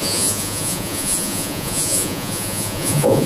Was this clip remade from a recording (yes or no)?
yes